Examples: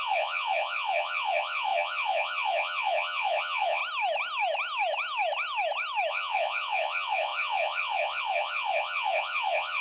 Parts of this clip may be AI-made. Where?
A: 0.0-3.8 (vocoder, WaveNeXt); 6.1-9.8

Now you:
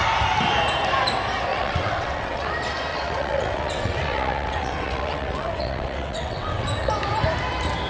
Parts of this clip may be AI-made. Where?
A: 1.5-2.5 (vocoder, WaveNeXt); 2.9-6.9

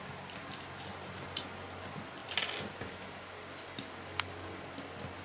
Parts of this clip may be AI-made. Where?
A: none

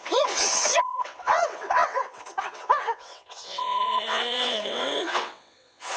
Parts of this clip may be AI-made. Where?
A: 0.0-6.0 (vocoder, WaveNeXt)

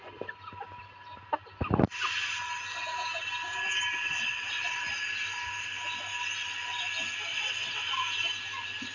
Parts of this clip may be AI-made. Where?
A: 4.1-4.8 (vocoder, WaveNeXt); 7.3-7.9

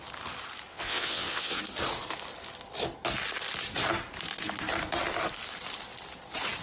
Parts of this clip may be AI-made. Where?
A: 0.7-1.6 (vocoder, WaveNeXt)

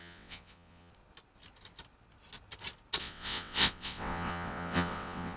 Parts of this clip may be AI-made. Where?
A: 0.0-0.9 (vocoder, WaveNeXt); 3.0-5.4

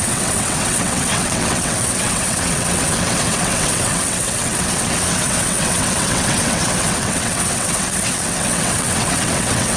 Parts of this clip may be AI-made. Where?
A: 0.0-9.8 (vocoder, WaveNeXt)